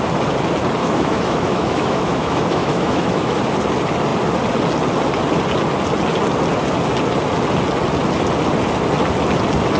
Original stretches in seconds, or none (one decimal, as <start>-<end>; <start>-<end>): 0.0-0.8; 3.4-9.8